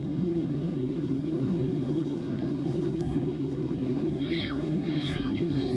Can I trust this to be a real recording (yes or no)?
no